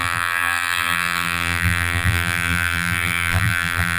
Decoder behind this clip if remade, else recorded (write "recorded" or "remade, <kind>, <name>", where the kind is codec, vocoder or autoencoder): remade, vocoder, BigVGAN v2